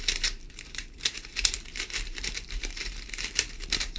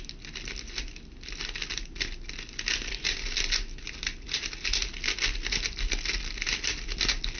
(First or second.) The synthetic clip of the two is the first